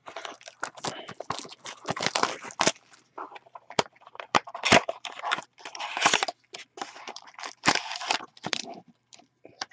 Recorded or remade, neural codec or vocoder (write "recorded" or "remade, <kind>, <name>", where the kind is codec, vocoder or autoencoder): remade, vocoder, BigVGAN v2